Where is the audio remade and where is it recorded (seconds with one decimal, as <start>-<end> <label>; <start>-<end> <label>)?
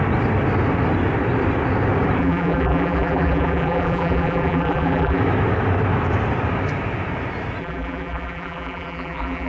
0.0-2.2 recorded; 2.2-5.2 remade; 5.2-7.6 recorded; 7.6-9.5 remade